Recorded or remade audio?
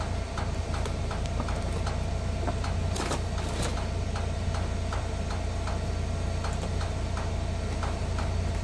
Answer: recorded